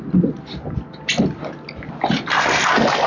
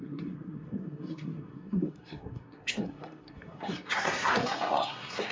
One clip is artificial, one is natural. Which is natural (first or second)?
first